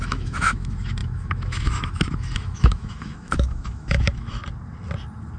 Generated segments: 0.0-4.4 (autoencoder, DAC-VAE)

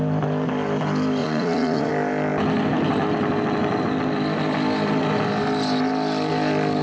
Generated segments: 1.2-1.9 (vocoder, Vocos)

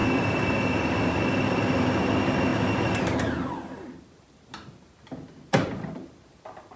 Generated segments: none

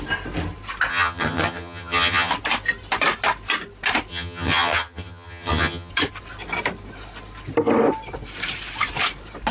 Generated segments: 0.9-2.3 (vocoder, HiFi-GAN); 4.1-5.9

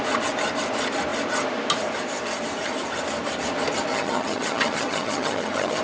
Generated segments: 3.9-5.8 (vocoder, HiFi-GAN)